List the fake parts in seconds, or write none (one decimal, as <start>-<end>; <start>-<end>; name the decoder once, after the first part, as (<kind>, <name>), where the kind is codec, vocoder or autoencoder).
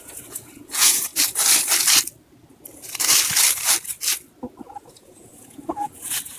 0.0-1.1 (vocoder, Vocos); 4.9-6.4